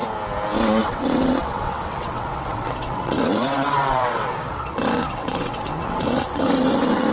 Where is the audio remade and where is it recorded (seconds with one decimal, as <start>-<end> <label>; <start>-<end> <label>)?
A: 0.0-0.8 recorded; 0.8-7.1 remade